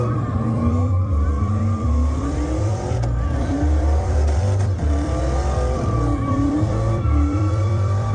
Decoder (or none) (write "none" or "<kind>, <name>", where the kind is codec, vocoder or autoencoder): vocoder, BigVGAN v2